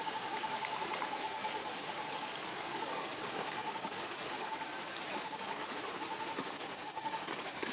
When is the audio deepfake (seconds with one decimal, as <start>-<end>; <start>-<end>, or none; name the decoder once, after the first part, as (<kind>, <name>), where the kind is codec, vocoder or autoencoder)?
0.0-4.5 (codec, DAC); 5.1-5.6; 6.5-7.7